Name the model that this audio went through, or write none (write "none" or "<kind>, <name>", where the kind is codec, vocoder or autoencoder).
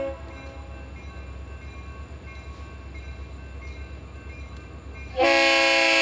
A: none